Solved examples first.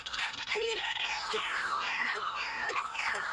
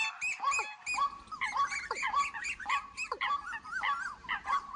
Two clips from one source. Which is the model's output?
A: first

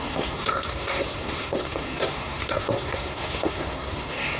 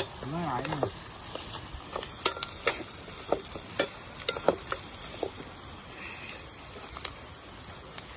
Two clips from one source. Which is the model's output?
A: first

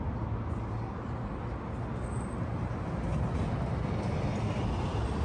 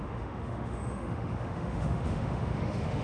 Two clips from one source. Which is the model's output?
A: second